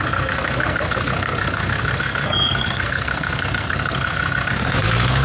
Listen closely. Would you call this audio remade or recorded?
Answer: remade